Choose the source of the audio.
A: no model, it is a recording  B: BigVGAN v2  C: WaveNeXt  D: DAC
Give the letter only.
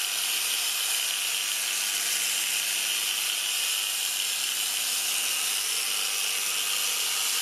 A